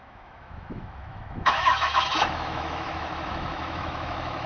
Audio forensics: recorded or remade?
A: remade